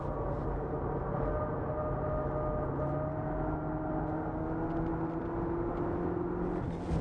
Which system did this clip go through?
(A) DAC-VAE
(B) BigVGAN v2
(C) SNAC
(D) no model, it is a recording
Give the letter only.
D